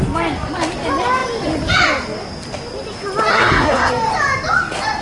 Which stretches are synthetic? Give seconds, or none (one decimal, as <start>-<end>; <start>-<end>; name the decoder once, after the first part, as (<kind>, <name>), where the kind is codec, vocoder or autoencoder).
3.3-3.9 (codec, SNAC)